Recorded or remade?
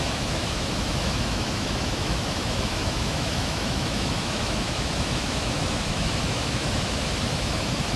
remade